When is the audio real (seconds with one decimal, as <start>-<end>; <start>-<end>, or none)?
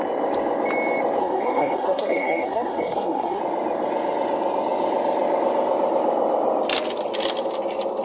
0.0-1.2; 3.4-8.0